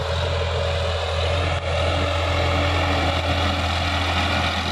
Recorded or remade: recorded